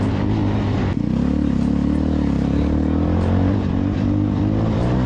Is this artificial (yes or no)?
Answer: no